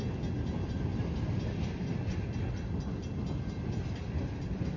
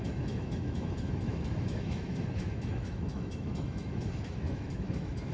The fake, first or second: second